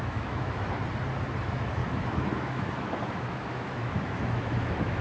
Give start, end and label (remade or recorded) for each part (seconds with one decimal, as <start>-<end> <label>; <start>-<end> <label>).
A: 0.0-0.8 remade; 0.8-1.4 recorded; 1.4-5.0 remade

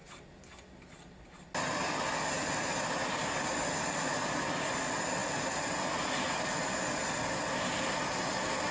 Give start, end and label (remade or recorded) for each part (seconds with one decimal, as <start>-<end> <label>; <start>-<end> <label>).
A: 0.0-8.7 recorded

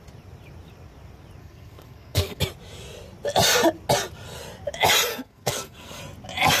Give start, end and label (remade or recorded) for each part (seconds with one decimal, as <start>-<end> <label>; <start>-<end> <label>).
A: 0.0-1.4 recorded; 1.4-2.4 remade; 2.4-5.1 recorded; 5.1-6.0 remade; 6.0-6.6 recorded

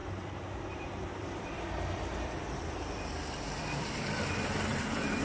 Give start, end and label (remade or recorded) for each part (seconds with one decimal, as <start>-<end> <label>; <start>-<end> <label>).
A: 0.0-3.1 remade; 3.1-3.6 recorded; 3.6-4.7 remade; 4.7-5.2 recorded

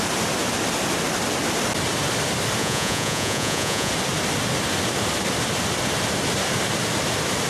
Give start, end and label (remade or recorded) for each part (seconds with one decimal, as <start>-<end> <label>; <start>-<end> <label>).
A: 0.0-2.6 recorded; 2.6-3.9 remade; 3.9-7.5 recorded

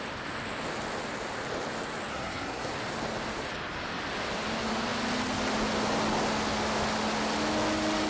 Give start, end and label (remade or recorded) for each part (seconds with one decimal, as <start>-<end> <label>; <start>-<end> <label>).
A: 0.0-2.1 recorded; 2.1-2.7 remade; 2.7-8.1 recorded

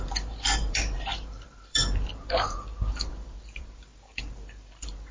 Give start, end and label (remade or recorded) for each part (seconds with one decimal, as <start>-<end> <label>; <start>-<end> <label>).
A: 0.0-5.1 remade